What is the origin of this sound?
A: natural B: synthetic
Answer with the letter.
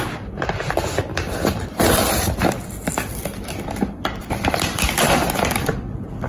B